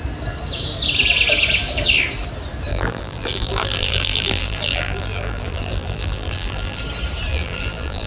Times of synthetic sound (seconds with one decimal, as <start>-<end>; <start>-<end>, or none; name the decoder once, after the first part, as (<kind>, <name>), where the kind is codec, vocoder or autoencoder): 2.7-6.8 (vocoder, BigVGAN v2); 7.3-8.1